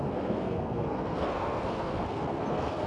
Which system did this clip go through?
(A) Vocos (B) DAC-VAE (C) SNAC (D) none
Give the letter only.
C